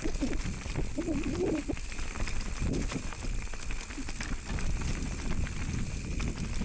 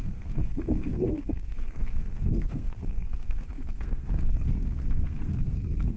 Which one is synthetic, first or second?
second